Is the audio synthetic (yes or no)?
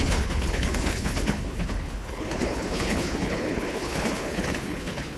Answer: yes